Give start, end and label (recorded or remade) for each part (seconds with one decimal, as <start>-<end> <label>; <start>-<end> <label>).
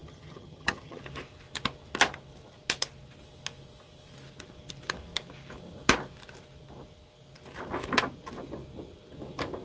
0.0-1.0 remade; 1.0-9.6 recorded